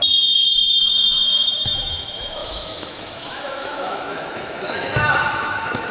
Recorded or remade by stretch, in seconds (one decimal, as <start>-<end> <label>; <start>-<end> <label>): 0.0-5.9 remade